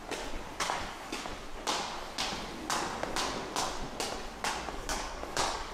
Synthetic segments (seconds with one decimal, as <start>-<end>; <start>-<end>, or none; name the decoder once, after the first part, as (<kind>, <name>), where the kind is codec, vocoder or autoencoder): 0.6-1.3 (codec, DAC); 4.7-5.7